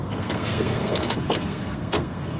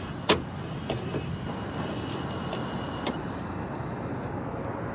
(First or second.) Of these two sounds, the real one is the second